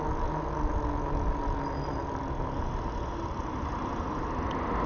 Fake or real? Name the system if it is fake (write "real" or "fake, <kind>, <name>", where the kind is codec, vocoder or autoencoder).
real